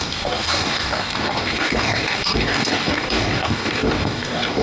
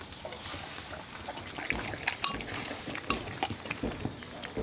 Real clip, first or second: second